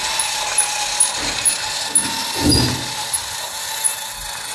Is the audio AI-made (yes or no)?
no